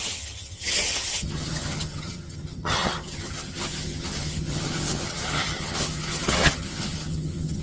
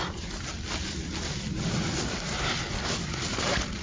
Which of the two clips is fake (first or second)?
first